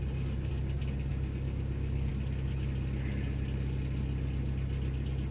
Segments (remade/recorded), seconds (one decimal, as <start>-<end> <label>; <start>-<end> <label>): 0.0-0.5 remade; 0.5-1.1 recorded; 1.1-2.1 remade; 2.1-5.3 recorded